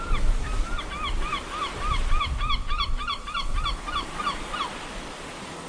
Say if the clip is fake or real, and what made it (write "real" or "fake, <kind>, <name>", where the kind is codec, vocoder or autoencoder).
real